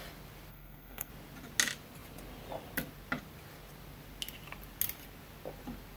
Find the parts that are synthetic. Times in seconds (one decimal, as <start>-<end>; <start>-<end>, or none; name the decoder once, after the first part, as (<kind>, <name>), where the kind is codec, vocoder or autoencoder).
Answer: 0.5-1.1 (codec, SNAC)